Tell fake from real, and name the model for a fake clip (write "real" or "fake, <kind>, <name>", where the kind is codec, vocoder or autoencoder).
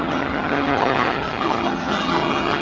fake, vocoder, HiFi-GAN